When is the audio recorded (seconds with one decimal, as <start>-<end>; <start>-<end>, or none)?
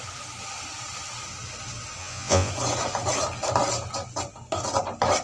0.0-2.0; 2.5-5.2